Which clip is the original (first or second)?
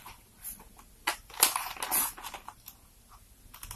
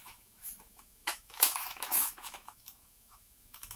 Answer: first